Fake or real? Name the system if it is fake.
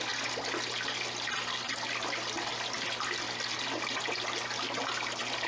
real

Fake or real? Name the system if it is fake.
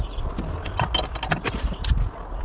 real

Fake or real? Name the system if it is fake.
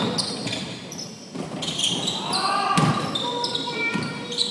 fake, vocoder, BigVGAN v2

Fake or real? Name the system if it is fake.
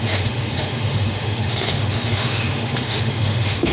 fake, autoencoder, DAC-VAE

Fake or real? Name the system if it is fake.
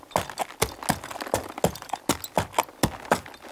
real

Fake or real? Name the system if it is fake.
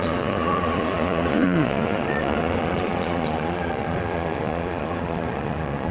fake, vocoder, Vocos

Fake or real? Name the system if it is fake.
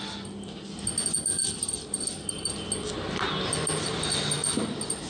real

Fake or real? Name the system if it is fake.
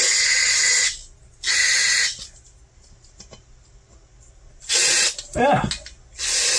real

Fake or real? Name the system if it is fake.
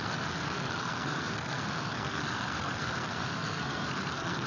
fake, codec, SNAC